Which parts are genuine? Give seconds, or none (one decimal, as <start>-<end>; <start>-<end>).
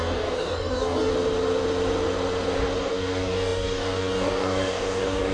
1.1-2.8